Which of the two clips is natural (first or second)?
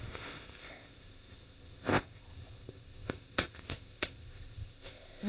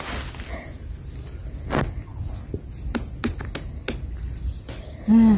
second